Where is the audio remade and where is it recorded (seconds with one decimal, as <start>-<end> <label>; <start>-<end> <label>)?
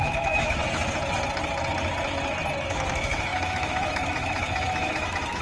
0.0-0.6 remade; 0.6-2.6 recorded; 2.6-5.4 remade